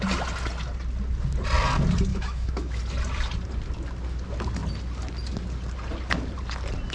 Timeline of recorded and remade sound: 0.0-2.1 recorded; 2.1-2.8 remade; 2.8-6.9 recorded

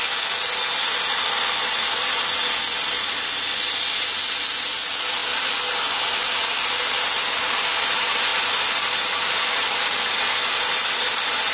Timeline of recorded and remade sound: 0.0-11.5 recorded

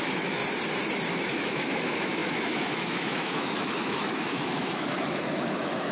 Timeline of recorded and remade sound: 0.0-0.4 remade; 0.4-1.1 recorded; 1.1-5.9 remade

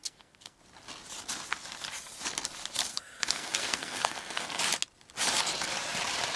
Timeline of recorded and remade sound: 0.0-0.6 remade; 0.6-2.9 recorded; 2.9-4.6 remade; 4.6-6.4 recorded

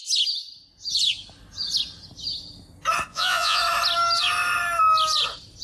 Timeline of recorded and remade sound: 0.0-3.1 recorded; 3.1-3.6 remade; 3.6-5.6 recorded

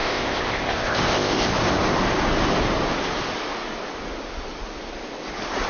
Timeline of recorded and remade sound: 0.0-1.5 remade; 1.5-5.7 recorded